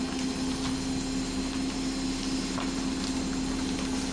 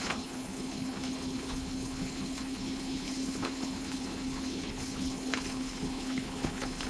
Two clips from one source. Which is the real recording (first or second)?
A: first